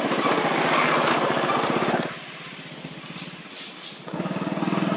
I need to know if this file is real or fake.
real